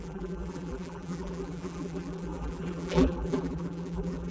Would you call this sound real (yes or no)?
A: no